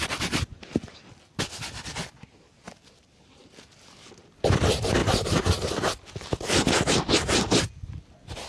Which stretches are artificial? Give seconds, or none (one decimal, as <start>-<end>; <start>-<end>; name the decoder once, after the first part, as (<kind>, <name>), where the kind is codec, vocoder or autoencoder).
none